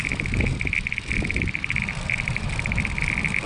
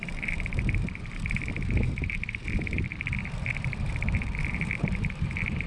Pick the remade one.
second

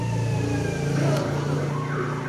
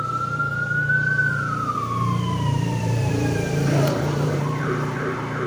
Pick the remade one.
second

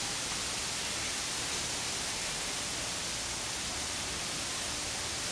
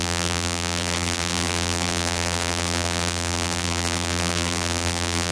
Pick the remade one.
second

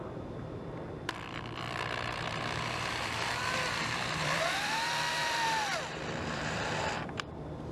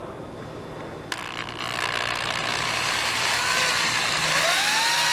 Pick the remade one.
first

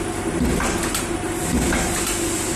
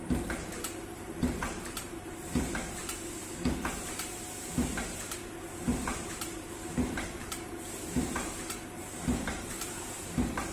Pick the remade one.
second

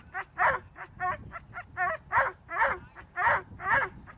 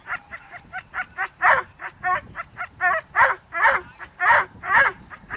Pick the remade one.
second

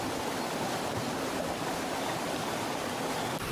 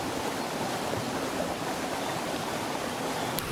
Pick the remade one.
second